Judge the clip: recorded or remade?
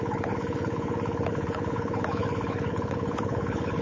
remade